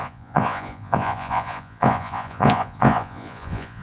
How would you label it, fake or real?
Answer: fake